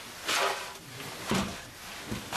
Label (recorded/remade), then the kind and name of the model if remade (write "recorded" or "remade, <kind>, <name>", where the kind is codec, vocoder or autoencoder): recorded